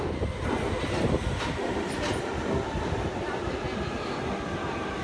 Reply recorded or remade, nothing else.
recorded